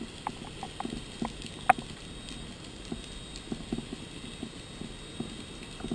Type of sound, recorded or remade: recorded